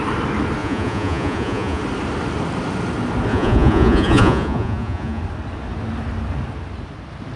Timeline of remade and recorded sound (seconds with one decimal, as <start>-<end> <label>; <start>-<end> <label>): 0.0-0.6 recorded; 0.6-1.8 remade; 1.8-3.3 recorded; 3.3-5.2 remade; 5.2-7.4 recorded